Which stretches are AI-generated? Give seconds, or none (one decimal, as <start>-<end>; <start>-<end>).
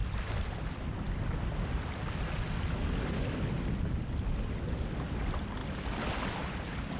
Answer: none